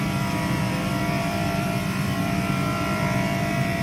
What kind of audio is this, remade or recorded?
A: remade